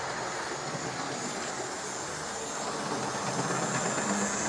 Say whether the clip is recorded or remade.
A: recorded